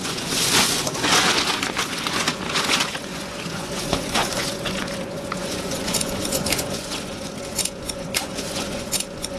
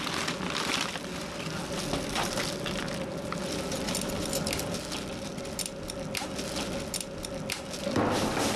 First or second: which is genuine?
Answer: second